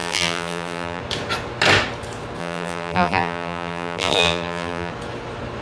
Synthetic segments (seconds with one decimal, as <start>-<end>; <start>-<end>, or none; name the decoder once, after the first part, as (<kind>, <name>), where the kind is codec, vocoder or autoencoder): 0.0-1.0 (vocoder, BigVGAN v2); 2.4-4.9